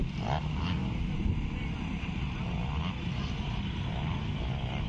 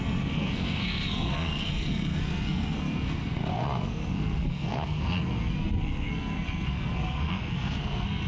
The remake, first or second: second